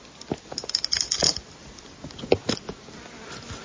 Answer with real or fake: real